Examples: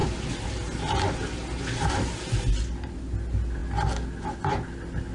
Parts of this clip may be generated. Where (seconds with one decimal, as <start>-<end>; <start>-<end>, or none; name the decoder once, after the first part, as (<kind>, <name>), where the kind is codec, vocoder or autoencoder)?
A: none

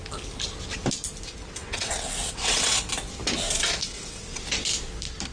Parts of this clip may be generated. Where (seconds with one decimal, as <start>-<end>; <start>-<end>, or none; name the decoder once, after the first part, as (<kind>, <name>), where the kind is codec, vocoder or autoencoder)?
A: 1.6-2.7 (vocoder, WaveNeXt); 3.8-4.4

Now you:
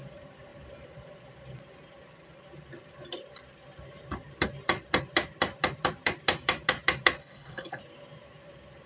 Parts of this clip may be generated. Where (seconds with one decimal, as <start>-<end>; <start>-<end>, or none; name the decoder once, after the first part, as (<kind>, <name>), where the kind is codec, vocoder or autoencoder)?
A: 7.2-7.8 (codec, HILCodec)

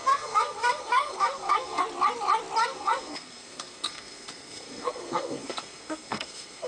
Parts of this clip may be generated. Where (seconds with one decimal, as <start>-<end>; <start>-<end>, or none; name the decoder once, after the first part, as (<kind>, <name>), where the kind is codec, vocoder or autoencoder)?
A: 0.0-1.8 (codec, SNAC); 2.6-6.7